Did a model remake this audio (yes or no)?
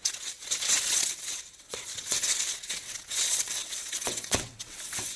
yes